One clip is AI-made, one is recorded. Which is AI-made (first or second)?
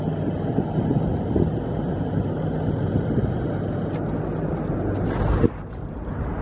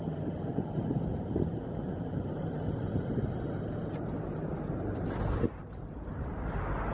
second